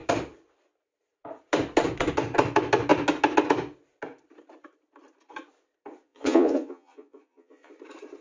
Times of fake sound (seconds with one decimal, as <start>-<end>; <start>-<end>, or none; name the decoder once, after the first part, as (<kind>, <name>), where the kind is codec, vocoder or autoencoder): 6.1-7.7 (vocoder, Vocos)